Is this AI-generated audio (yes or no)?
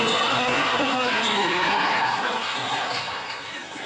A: yes